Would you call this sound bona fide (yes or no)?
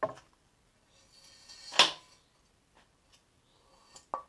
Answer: yes